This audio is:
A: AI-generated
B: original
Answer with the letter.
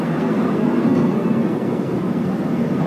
A